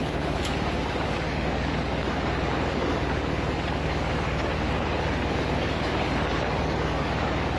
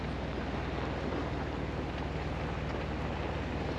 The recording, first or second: second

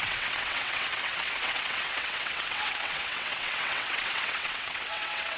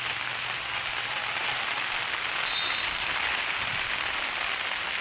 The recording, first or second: second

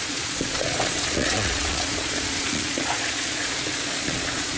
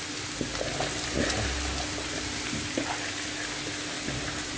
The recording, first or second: second